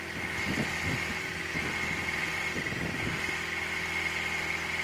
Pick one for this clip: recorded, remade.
recorded